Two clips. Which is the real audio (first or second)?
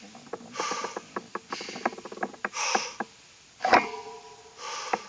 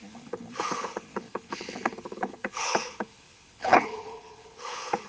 first